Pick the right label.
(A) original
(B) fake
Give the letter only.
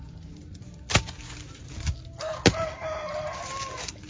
A